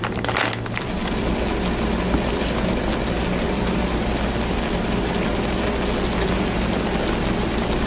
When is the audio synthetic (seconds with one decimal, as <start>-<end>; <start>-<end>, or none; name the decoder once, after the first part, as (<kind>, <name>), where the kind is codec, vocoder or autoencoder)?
none